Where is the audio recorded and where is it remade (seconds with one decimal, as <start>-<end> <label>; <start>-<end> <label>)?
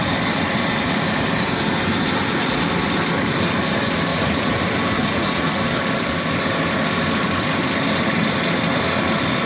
0.0-4.1 recorded; 4.1-4.6 remade; 4.6-5.0 recorded; 5.0-5.6 remade; 5.6-9.5 recorded